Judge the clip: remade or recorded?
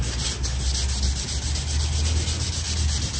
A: recorded